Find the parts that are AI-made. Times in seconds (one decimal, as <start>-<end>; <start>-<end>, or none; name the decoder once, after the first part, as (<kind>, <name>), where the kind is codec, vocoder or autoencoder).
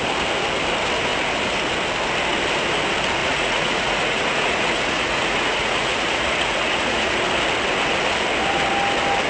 3.2-7.1 (vocoder, Vocos)